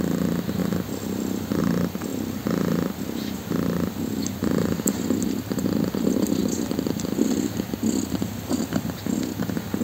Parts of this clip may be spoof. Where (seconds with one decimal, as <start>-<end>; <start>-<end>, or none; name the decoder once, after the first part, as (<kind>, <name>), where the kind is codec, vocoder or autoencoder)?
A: 0.6-1.6 (vocoder, BigVGAN v2); 2.1-4.2; 6.4-7.7